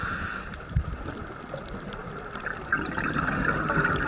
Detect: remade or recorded recorded